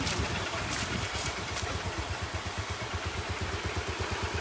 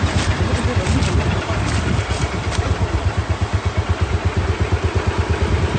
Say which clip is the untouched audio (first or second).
second